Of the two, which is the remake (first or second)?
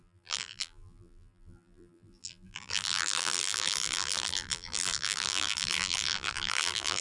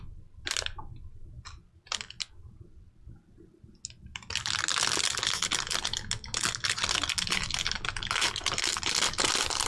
first